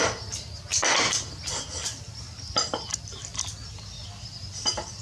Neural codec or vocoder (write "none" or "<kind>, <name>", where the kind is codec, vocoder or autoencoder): none